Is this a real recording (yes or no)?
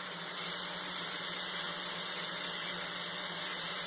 yes